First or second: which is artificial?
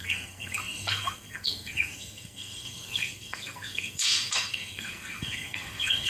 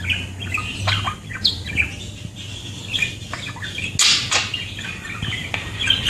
first